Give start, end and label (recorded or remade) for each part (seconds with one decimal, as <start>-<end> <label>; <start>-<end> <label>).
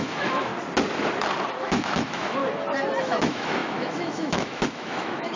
0.0-0.5 remade; 0.5-1.6 recorded; 1.6-2.4 remade; 2.4-3.0 recorded; 3.0-5.4 remade